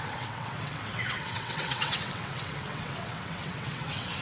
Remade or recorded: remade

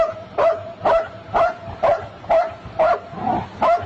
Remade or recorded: recorded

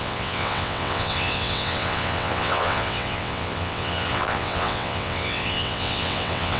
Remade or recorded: remade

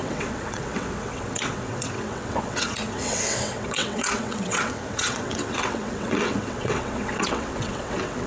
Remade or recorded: remade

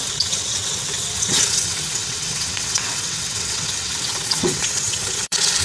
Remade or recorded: remade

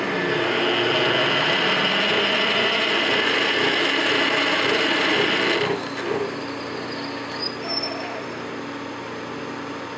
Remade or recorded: recorded